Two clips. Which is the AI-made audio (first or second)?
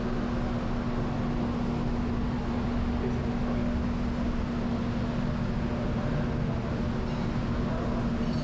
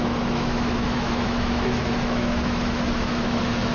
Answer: second